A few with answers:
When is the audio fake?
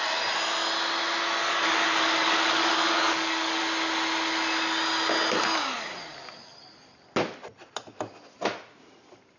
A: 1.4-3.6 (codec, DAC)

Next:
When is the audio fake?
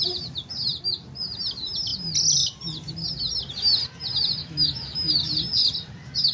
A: 4.4-5.1 (autoencoder, DAC-VAE)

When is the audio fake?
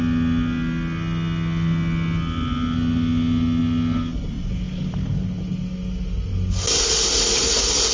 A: none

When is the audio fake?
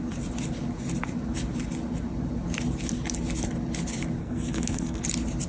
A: 4.2-5.0 (codec, SNAC)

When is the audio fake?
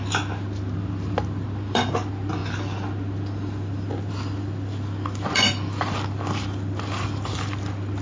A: 0.0-8.0 (vocoder, BigVGAN v2)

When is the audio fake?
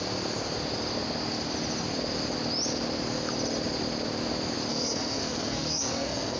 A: 4.7-6.4 (codec, SNAC)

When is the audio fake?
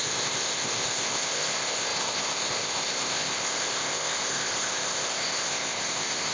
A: 0.0-6.3 (codec, ZipCodec)